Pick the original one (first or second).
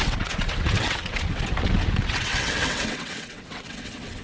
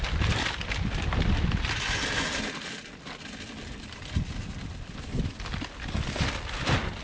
second